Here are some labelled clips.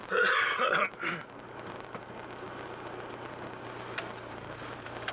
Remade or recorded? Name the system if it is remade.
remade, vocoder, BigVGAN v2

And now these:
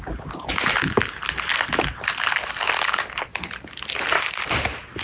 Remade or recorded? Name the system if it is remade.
recorded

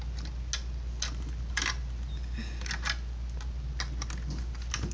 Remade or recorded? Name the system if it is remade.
recorded